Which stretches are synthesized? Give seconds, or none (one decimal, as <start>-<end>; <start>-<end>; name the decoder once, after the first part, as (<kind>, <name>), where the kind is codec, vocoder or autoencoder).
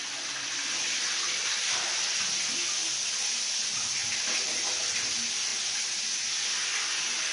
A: none